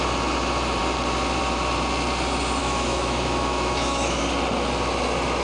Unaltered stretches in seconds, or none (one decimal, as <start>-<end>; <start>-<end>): 0.0-2.6; 4.2-5.4